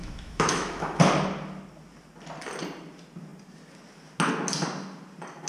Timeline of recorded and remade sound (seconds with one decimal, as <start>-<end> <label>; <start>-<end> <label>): 0.0-1.0 remade; 1.0-5.5 recorded